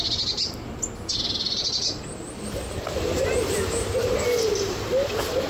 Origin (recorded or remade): recorded